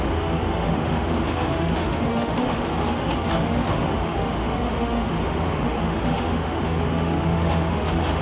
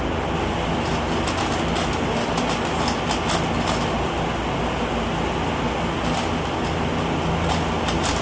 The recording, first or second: second